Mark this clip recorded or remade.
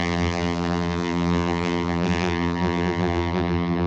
remade